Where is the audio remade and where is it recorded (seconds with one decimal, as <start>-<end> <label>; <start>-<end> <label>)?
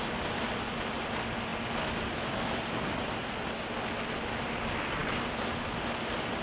0.0-6.4 recorded